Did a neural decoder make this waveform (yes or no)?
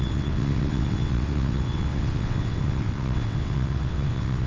yes